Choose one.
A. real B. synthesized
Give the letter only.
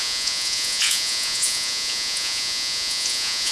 B